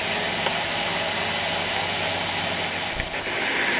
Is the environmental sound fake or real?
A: real